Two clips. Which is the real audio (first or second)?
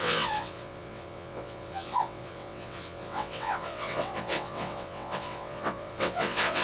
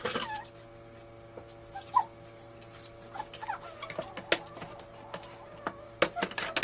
second